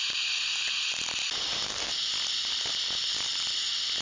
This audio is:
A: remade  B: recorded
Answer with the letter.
B